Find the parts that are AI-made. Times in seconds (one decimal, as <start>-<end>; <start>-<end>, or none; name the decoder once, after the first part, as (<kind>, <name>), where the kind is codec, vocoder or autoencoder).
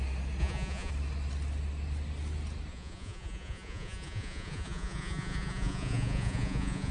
0.4-0.9 (vocoder, Vocos); 2.7-6.9